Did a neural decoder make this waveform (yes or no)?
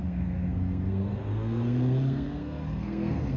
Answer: yes